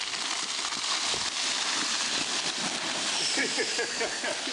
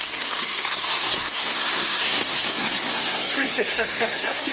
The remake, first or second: second